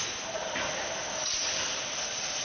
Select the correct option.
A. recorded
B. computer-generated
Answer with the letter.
A